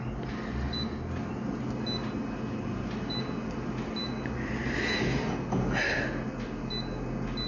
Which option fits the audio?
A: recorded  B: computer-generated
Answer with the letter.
A